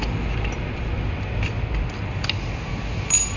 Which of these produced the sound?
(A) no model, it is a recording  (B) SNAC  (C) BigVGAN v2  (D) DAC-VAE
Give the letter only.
A